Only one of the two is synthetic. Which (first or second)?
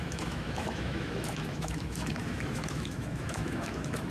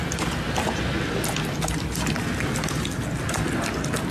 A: first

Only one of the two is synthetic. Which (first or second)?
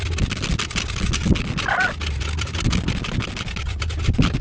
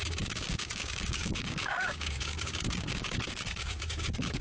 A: second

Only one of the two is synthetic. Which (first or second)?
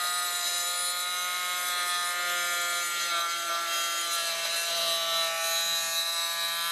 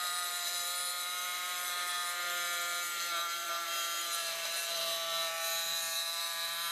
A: second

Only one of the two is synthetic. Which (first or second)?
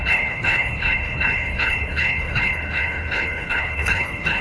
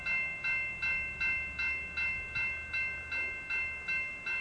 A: first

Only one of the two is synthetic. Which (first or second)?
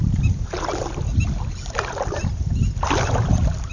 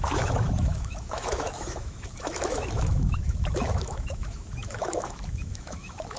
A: second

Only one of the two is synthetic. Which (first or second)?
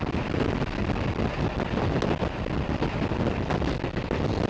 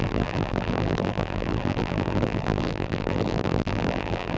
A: second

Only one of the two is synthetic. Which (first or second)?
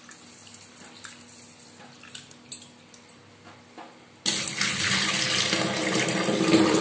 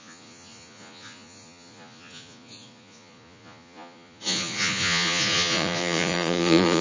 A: second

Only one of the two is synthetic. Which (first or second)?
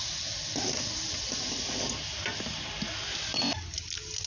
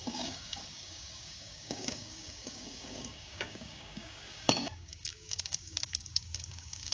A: second